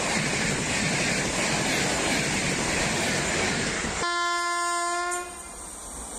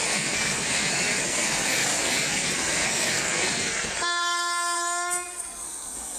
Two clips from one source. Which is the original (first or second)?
first